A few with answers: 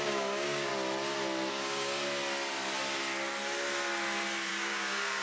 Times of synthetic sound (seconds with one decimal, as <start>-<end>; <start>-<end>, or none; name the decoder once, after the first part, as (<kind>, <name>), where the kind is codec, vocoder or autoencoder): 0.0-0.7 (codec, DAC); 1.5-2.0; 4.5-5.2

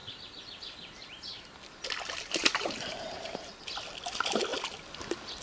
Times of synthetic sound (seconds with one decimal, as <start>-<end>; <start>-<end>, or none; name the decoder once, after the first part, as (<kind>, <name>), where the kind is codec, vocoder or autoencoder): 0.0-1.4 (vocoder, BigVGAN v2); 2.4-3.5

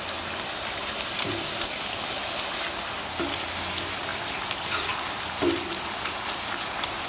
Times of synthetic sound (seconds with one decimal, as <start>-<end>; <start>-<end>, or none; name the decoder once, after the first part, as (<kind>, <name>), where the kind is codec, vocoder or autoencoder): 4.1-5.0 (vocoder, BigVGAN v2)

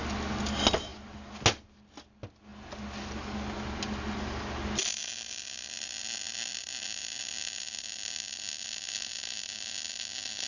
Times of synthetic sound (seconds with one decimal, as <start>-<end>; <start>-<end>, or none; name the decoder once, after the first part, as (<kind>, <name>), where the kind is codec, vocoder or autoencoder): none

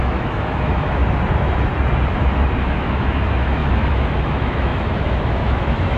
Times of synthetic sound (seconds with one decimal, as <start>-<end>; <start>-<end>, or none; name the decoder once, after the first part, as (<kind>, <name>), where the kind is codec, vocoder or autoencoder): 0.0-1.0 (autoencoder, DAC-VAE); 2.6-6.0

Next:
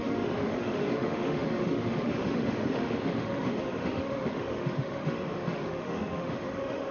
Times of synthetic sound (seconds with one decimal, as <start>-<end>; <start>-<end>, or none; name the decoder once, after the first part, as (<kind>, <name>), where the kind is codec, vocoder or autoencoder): 0.0-6.9 (autoencoder, DAC-VAE)